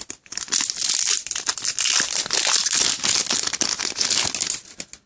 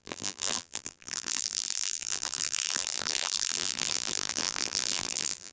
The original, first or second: first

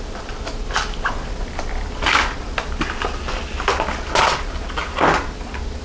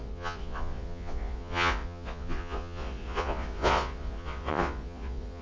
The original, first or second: first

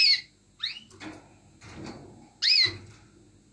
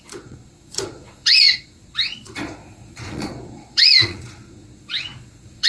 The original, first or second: first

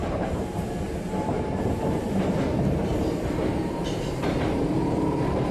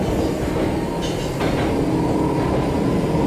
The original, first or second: second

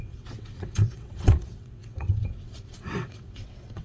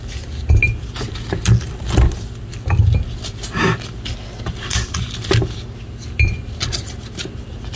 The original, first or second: second